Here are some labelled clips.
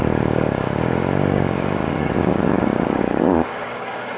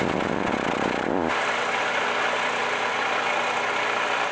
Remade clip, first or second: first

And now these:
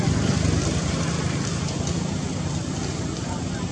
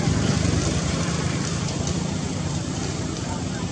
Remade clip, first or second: second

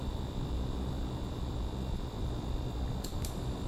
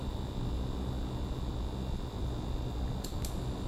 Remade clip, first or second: first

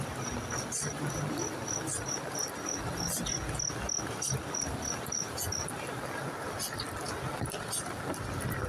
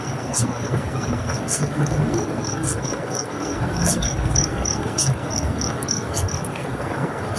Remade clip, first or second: second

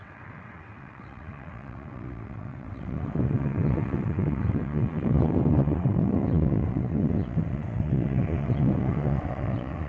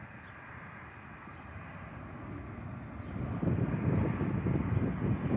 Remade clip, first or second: first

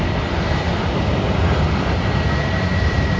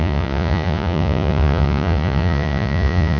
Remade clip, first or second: second